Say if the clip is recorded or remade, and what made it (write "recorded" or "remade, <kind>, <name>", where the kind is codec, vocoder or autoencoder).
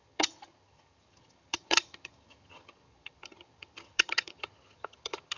remade, vocoder, HiFi-GAN